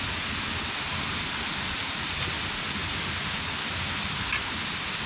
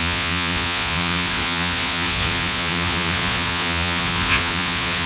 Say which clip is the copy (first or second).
second